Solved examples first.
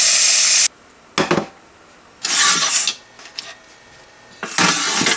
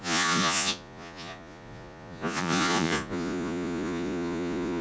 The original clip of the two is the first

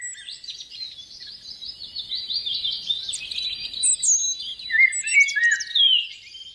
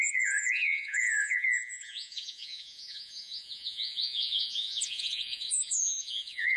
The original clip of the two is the first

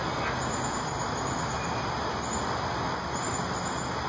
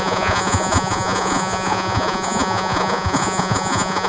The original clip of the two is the first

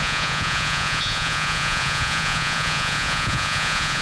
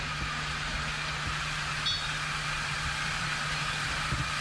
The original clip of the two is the second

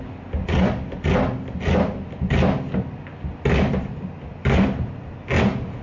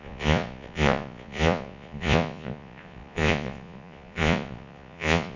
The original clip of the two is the first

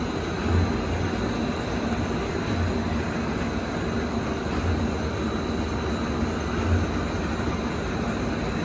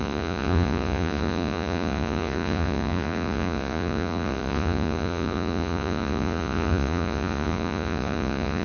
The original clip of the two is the first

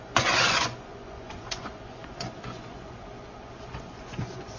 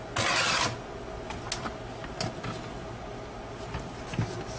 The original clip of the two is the second